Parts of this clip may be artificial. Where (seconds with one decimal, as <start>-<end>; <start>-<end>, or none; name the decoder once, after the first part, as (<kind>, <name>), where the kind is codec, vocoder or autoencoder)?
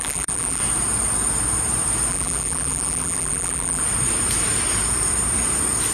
0.0-0.6 (vocoder, BigVGAN v2); 2.1-3.8